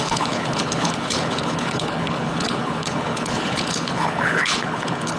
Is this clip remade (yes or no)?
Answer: yes